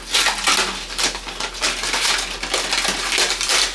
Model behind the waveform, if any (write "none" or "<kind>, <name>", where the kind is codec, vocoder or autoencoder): none